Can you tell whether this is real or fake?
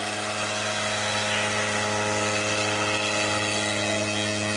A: real